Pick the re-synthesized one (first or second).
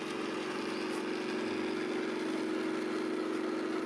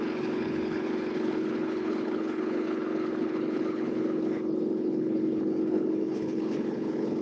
second